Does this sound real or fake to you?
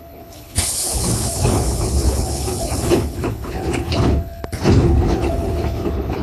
fake